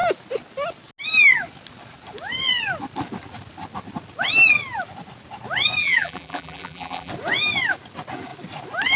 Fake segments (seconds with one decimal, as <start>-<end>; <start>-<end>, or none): 5.8-7.1